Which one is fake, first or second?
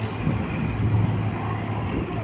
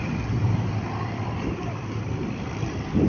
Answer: second